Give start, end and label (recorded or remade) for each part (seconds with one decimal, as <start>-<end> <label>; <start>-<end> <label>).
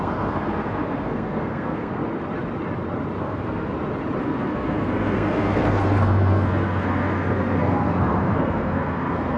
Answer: 0.0-2.0 remade; 2.0-3.2 recorded; 3.2-3.7 remade; 3.7-4.2 recorded; 4.2-9.4 remade